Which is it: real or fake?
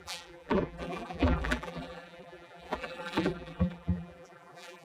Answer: fake